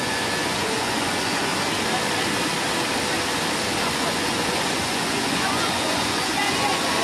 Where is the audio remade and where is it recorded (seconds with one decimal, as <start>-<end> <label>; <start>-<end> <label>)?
0.0-1.5 remade; 1.5-3.8 recorded; 3.8-7.0 remade